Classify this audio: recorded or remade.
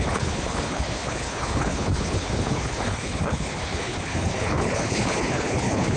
remade